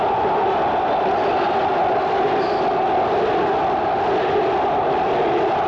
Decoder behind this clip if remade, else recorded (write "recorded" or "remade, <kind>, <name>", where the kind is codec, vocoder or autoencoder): recorded